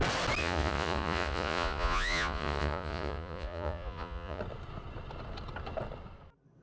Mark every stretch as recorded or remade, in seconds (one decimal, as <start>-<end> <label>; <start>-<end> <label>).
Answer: 0.0-0.4 recorded; 0.4-4.4 remade; 4.4-6.6 recorded